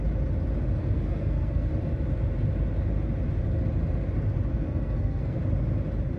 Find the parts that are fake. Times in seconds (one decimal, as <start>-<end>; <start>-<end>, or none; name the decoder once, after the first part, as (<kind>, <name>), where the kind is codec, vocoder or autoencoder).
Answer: 0.8-1.7 (codec, SNAC); 4.5-5.4